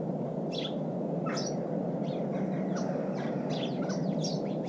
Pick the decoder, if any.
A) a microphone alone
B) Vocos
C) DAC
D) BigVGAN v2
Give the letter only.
A